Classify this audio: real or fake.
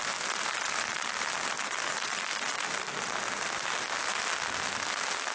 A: real